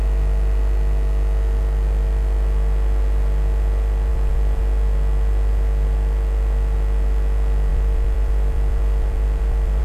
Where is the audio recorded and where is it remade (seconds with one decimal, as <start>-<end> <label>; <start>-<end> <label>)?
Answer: 0.0-4.1 recorded; 4.1-4.6 remade; 4.6-7.7 recorded; 7.7-9.8 remade